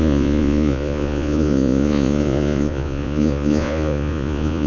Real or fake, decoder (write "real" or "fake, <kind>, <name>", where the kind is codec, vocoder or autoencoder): fake, vocoder, Vocos